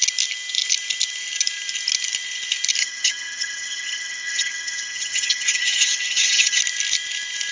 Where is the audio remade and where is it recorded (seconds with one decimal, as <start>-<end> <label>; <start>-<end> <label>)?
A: 0.0-2.8 recorded; 2.8-6.6 remade; 6.6-7.5 recorded